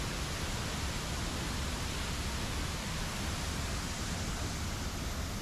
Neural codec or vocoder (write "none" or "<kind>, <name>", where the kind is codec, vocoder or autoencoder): none